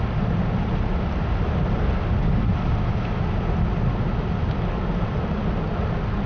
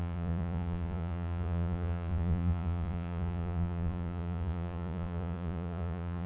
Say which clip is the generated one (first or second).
second